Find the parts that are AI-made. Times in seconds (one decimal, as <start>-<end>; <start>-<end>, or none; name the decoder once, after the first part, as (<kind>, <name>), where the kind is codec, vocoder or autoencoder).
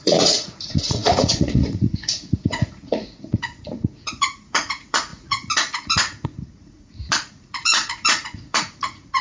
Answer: 0.0-9.2 (vocoder, Vocos)